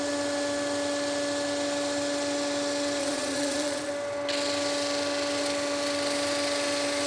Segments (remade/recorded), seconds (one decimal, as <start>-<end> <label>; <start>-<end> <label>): 0.0-3.0 recorded; 3.0-3.9 remade; 3.9-7.1 recorded